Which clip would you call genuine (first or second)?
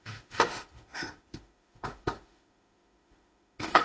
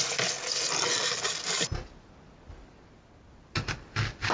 second